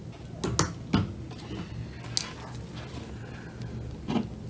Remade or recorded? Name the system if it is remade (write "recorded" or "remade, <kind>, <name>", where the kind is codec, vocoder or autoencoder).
recorded